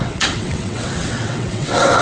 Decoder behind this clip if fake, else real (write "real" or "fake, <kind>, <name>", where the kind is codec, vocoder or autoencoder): fake, vocoder, WaveNeXt